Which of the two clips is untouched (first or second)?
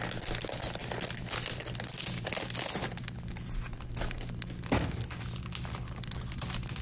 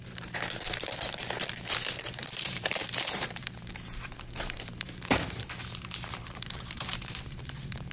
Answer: first